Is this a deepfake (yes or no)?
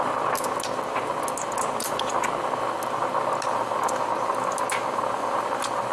no